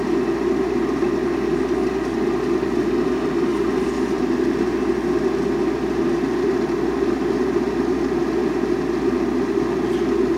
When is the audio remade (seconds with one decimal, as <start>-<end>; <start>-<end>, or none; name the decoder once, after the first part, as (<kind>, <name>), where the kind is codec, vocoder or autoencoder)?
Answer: none